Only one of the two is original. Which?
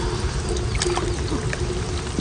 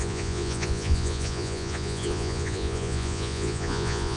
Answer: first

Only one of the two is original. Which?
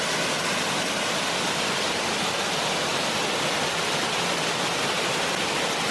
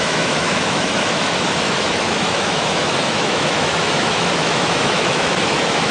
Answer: first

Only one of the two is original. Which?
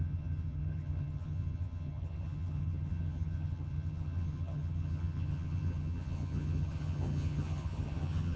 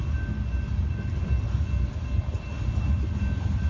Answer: second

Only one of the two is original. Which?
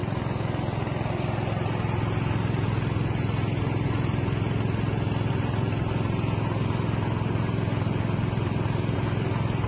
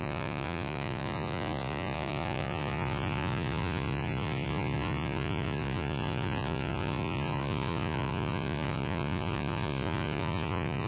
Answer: first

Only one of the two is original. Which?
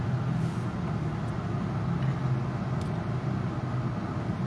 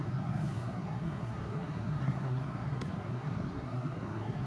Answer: first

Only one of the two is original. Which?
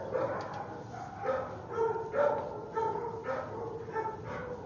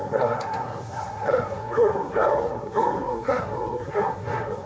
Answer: first